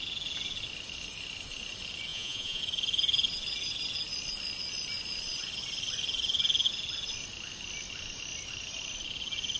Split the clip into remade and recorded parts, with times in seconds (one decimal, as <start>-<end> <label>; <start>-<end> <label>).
0.0-2.1 recorded; 2.1-2.6 remade; 2.6-9.6 recorded